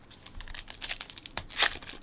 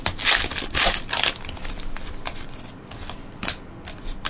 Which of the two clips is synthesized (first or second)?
first